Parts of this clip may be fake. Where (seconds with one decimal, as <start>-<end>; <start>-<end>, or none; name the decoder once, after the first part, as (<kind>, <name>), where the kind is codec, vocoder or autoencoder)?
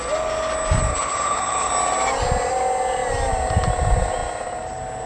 0.9-1.7 (codec, HILCodec)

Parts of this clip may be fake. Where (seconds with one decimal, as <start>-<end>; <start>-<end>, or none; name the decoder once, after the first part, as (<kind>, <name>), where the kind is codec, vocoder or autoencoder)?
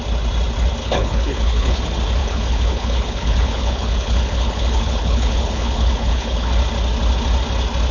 0.8-1.8 (codec, HILCodec); 2.2-6.5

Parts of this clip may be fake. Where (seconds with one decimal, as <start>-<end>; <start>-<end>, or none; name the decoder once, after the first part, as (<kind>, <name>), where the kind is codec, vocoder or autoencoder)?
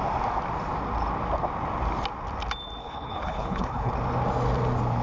2.8-3.9 (codec, HILCodec)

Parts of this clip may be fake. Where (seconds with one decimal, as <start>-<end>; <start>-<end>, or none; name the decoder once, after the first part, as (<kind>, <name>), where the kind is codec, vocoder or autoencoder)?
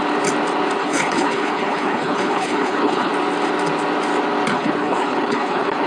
0.8-3.1 (codec, HILCodec); 4.5-5.9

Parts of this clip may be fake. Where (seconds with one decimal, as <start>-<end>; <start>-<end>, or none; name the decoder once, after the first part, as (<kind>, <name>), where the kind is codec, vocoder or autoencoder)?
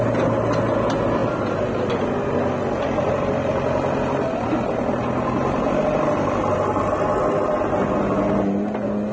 none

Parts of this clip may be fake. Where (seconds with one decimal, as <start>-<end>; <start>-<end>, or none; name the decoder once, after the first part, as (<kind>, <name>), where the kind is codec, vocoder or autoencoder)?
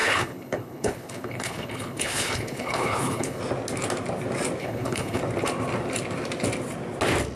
0.0-3.4 (codec, HILCodec); 4.6-5.2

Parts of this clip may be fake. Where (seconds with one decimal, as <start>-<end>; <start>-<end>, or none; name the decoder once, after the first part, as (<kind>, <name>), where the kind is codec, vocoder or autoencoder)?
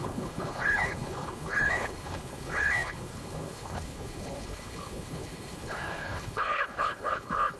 0.0-7.6 (codec, HILCodec)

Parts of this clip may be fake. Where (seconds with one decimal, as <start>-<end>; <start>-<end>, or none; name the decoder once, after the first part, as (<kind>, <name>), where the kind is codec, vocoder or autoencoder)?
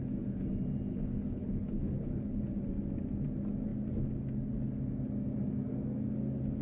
0.9-2.4 (codec, HILCodec)